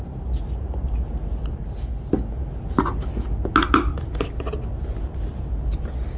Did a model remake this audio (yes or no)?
no